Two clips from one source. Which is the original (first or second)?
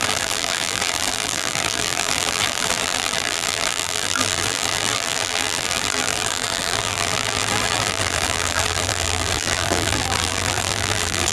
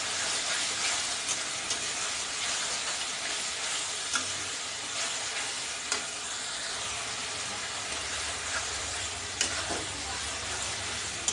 second